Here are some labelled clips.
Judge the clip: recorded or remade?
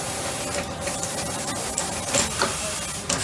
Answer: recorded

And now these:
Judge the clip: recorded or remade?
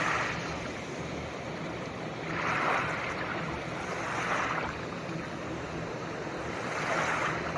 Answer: recorded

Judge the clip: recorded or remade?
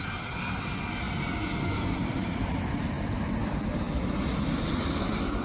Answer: recorded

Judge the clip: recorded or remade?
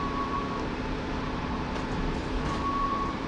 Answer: remade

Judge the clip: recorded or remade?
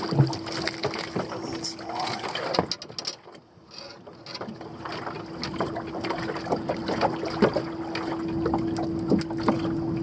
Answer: recorded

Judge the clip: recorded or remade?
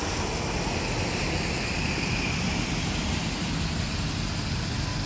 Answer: remade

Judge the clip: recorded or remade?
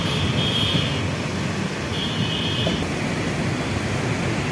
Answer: recorded